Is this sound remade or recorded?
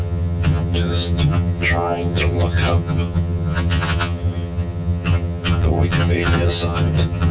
remade